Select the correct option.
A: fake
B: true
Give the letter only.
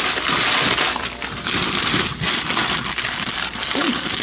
B